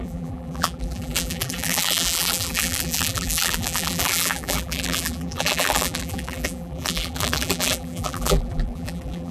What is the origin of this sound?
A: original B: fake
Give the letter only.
B